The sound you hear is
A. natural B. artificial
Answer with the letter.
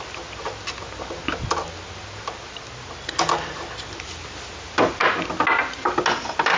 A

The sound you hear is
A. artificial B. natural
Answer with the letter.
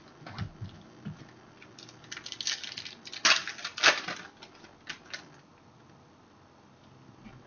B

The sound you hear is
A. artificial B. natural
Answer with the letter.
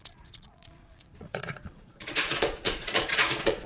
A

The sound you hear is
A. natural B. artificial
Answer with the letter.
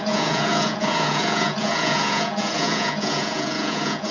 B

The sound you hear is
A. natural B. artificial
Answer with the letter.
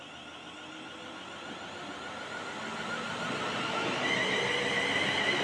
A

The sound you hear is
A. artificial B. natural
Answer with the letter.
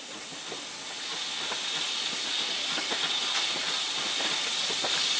B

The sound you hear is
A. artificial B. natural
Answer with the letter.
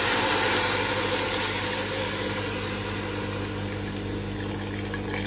B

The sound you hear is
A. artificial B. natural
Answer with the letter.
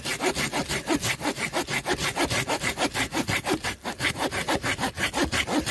B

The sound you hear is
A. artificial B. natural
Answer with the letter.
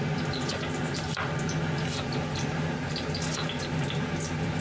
B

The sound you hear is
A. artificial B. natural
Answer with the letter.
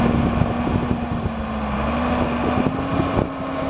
B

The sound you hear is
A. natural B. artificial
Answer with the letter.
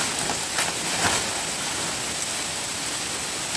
A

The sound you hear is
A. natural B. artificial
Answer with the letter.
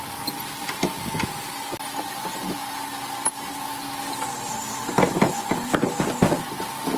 A